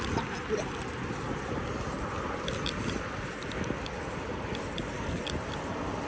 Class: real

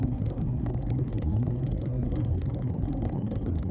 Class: fake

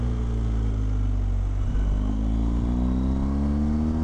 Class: real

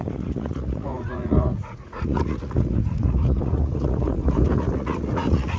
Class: fake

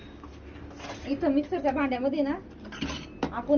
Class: real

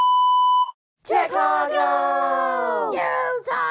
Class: real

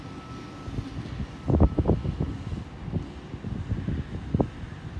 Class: real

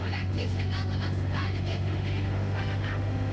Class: fake